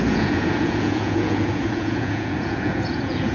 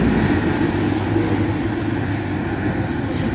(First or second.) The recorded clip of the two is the second